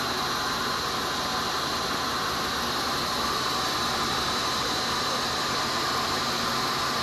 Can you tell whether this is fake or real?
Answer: real